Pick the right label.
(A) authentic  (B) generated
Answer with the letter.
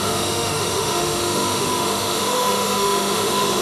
B